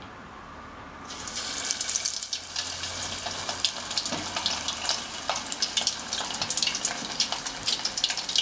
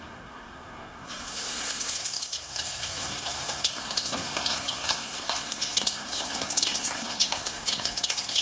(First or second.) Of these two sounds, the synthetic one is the second